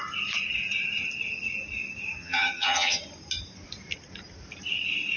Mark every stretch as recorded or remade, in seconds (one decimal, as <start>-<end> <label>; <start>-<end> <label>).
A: 0.0-2.2 recorded; 2.2-3.0 remade; 3.0-5.2 recorded